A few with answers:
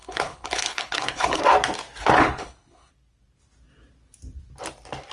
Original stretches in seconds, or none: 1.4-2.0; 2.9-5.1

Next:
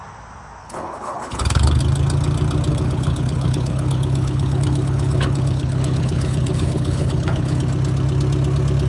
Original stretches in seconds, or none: 0.0-0.6; 1.8-2.7; 7.6-8.9

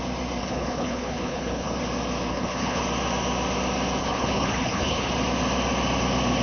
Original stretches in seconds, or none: 0.0-0.4; 1.8-2.3; 2.8-4.0; 5.1-6.4

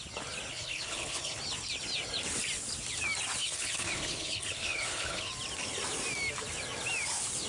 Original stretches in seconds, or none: 0.0-0.5; 1.4-3.4; 5.3-7.5

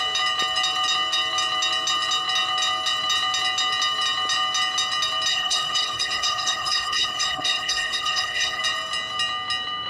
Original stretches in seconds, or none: 0.0-5.3; 8.6-9.9

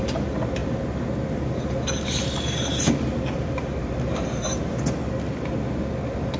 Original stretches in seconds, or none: 0.0-6.4

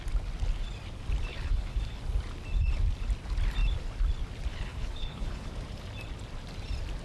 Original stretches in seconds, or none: 0.0-1.3; 2.0-4.5; 5.5-7.0

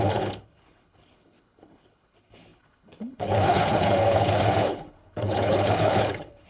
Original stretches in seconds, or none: none